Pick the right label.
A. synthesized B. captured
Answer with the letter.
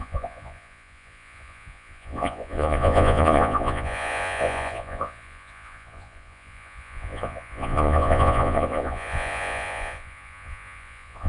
A